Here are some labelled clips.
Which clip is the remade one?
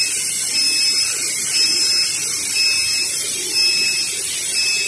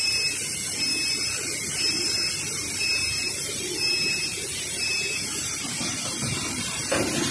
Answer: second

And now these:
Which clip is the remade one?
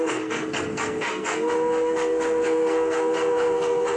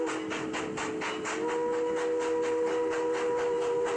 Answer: first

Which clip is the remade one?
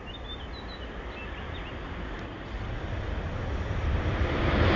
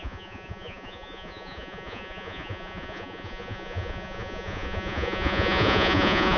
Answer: second